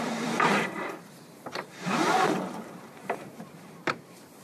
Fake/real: fake